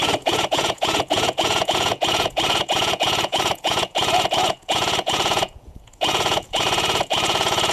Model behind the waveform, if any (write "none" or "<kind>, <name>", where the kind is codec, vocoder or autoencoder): vocoder, Vocos